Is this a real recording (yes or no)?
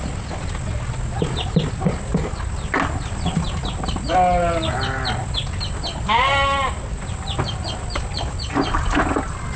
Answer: yes